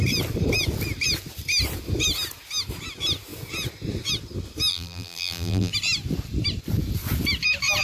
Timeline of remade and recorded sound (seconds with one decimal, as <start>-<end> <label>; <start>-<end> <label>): 0.0-4.7 recorded; 4.7-5.7 remade; 5.7-7.8 recorded

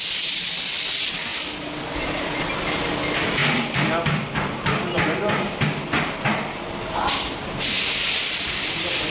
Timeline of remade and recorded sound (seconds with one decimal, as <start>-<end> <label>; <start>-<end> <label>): 0.0-9.1 recorded

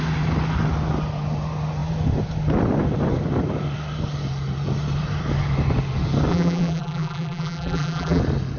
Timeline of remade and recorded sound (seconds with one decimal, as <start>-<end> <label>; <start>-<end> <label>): 0.0-6.3 recorded; 6.3-8.2 remade; 8.2-8.6 recorded

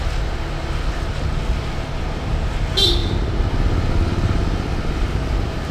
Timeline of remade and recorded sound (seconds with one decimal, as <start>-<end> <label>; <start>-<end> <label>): 0.0-5.7 recorded

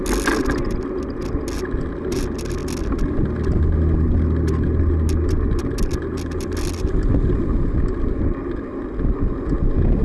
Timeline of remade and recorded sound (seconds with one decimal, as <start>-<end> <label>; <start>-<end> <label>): 0.0-10.0 recorded

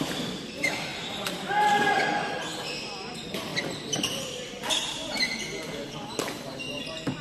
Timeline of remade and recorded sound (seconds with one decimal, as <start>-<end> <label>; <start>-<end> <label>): 0.0-0.9 remade; 0.9-2.0 recorded; 2.0-2.5 remade; 2.5-3.1 recorded; 3.1-7.2 remade

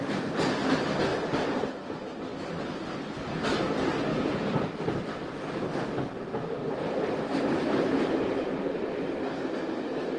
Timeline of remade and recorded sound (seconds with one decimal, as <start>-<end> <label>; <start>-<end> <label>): 0.0-1.1 recorded; 1.1-1.8 remade; 1.8-4.1 recorded; 4.1-4.7 remade; 4.7-7.3 recorded; 7.3-8.8 remade; 8.8-10.2 recorded